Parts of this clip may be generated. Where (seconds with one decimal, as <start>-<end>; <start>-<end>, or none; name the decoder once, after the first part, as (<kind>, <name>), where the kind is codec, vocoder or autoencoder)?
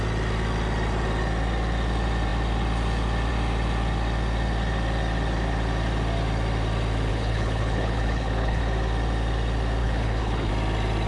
7.1-8.6 (codec, HILCodec); 9.8-10.5